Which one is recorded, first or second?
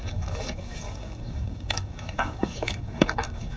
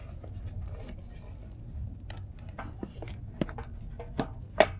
second